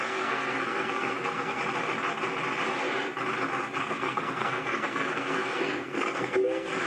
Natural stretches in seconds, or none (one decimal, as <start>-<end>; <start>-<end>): 1.6-3.8